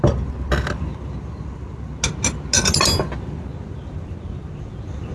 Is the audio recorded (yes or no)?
yes